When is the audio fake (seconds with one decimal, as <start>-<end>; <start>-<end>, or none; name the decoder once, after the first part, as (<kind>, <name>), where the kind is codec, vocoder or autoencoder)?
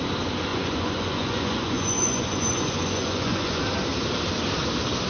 0.5-3.6 (vocoder, Vocos)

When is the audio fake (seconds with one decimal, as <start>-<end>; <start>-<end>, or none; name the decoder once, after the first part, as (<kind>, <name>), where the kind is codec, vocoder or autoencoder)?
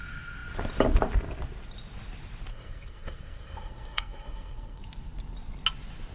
2.5-4.8 (codec, SNAC)